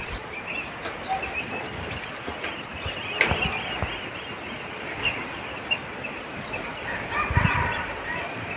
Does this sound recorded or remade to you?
recorded